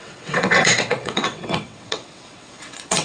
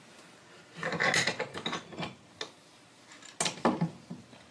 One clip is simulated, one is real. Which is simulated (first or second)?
first